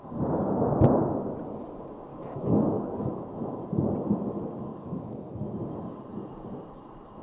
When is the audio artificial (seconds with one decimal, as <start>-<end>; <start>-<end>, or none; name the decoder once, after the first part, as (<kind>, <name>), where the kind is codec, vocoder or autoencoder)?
2.1-3.2 (codec, DAC); 4.7-5.3